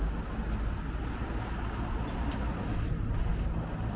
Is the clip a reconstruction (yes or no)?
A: no